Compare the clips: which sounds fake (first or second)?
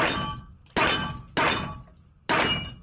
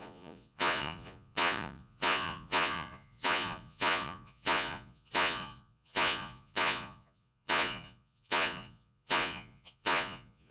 second